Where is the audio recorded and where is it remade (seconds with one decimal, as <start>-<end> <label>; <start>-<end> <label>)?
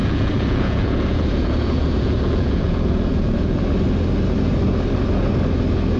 0.0-3.6 remade; 3.6-6.0 recorded